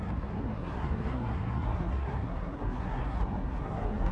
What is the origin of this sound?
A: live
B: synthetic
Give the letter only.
B